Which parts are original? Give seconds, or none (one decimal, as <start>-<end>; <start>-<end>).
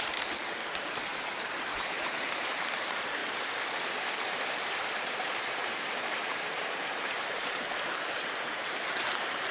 3.2-4.2